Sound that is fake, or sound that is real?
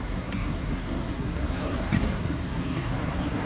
fake